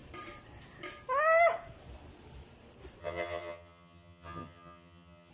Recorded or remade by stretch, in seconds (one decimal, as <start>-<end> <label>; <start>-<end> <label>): 0.0-3.0 recorded; 3.0-5.3 remade

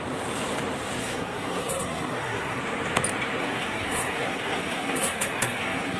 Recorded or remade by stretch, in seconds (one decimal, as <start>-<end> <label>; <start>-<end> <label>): 0.0-1.0 recorded; 1.0-2.6 remade; 2.6-3.4 recorded; 3.4-6.0 remade